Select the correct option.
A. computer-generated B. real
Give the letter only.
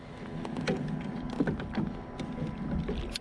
B